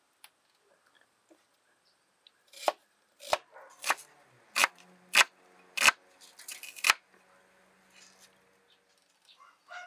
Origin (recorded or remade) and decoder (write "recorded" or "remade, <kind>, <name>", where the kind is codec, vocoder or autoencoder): recorded